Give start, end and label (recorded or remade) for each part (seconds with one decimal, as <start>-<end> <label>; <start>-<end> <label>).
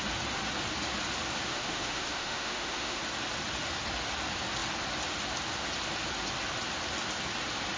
0.0-1.5 recorded; 1.5-3.0 remade; 3.0-7.8 recorded